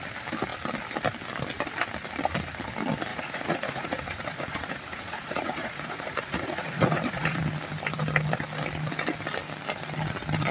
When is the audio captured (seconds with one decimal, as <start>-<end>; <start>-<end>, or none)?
0.0-3.1; 7.4-10.5